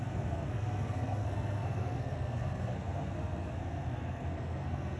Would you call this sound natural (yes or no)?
no